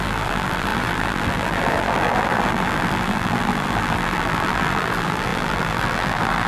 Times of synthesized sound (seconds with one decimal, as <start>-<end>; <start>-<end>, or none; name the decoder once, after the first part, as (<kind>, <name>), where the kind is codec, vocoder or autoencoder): 0.0-6.5 (vocoder, BigVGAN v2)